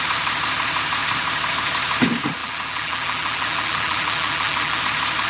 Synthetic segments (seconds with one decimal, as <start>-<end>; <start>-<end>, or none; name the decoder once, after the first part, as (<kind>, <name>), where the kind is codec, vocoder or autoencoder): 2.4-4.8 (vocoder, BigVGAN v2)